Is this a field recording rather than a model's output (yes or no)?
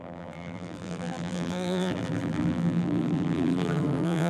no